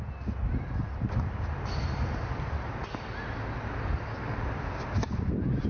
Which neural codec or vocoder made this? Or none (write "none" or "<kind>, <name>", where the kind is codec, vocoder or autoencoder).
none